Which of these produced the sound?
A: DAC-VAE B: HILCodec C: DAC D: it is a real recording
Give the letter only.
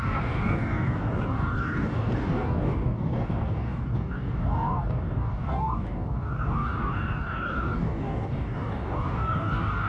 C